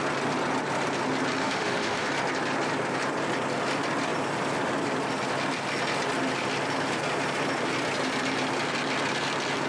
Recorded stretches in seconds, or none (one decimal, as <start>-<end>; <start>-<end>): 0.0-1.4; 2.1-9.7